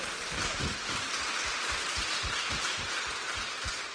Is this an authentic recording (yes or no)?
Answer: yes